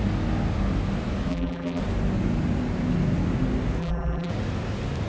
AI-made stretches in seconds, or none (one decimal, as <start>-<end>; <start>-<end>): 1.3-1.8; 3.8-4.3